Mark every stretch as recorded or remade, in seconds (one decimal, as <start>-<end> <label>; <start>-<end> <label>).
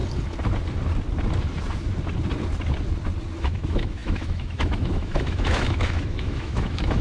0.0-3.4 recorded; 3.4-7.0 remade